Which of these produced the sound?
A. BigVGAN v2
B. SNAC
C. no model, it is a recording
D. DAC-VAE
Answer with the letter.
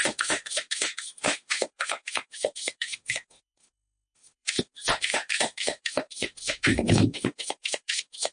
D